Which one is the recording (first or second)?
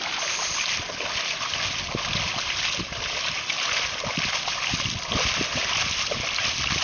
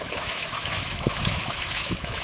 first